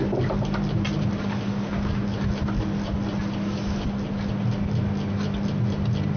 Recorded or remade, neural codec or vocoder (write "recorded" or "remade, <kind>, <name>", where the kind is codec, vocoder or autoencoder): recorded